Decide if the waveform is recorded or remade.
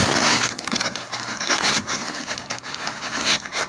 remade